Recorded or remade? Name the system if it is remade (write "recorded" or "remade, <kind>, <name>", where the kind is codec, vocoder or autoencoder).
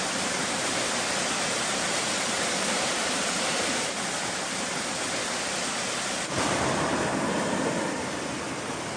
remade, vocoder, BigVGAN v2